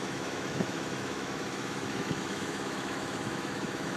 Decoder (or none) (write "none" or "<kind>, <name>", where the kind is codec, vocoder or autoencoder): autoencoder, DAC-VAE